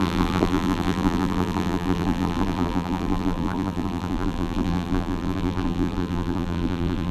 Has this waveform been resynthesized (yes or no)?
yes